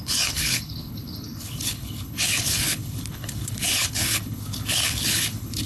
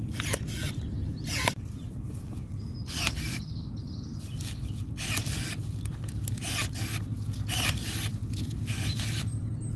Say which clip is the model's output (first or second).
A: first